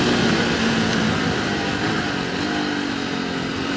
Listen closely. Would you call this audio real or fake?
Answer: real